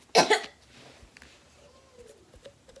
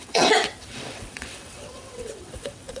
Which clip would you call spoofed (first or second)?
second